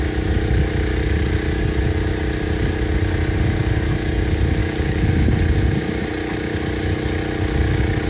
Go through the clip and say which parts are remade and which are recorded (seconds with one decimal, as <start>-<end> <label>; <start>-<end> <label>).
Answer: 0.0-4.6 recorded; 4.6-5.1 remade; 5.1-8.1 recorded